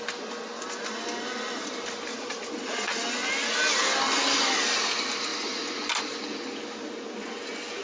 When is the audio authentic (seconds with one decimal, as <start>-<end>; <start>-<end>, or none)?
0.0-2.1; 3.0-7.8